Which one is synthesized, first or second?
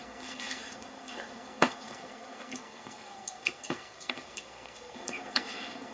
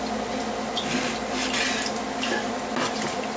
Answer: first